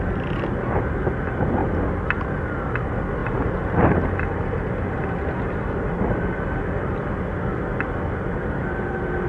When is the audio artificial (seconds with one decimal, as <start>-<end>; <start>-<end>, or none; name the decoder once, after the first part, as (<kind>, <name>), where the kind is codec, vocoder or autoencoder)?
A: 3.2-6.9 (vocoder, BigVGAN v2)